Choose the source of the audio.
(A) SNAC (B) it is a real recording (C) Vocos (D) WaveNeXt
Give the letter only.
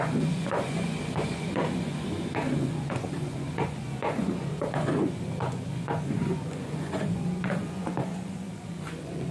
C